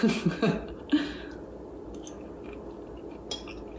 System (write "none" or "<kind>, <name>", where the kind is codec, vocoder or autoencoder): none